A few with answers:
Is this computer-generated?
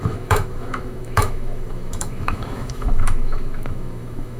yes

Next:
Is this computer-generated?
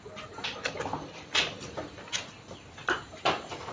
no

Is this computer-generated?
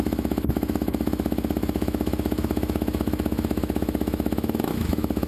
yes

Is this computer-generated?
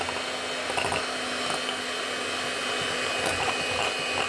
no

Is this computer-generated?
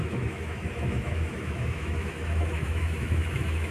yes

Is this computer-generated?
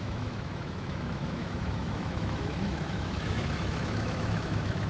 yes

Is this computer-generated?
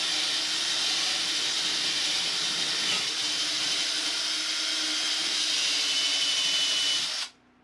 no